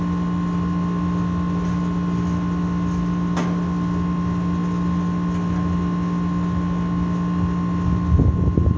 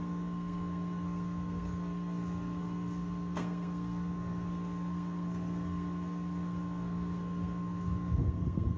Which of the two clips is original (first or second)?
first